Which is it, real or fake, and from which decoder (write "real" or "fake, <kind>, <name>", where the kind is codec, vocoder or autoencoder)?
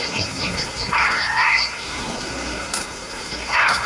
fake, codec, SNAC